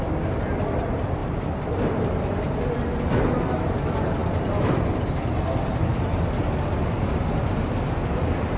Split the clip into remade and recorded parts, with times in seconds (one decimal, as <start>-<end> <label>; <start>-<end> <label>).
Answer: 0.0-8.6 recorded